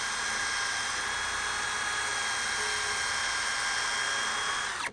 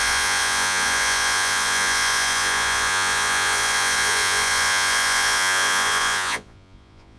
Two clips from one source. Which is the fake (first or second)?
second